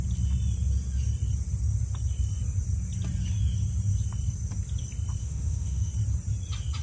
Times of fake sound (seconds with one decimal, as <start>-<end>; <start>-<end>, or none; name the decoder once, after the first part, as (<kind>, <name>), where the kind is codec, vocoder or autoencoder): 5.2-5.9 (autoencoder, DAC-VAE)